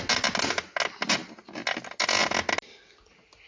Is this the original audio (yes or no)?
yes